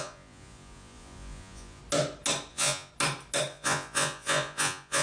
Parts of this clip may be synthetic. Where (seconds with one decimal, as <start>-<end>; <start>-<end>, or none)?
0.0-1.8; 2.5-2.9; 3.5-5.0